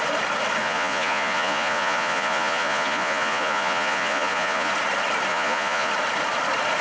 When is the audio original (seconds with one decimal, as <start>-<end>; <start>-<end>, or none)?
0.0-0.6; 4.7-5.3; 5.9-6.8